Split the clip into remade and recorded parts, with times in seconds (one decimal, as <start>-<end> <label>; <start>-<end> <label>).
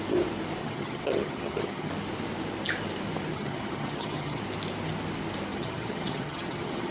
0.0-0.6 recorded; 0.6-1.9 remade; 1.9-3.3 recorded; 3.3-4.4 remade; 4.4-5.5 recorded; 5.5-6.9 remade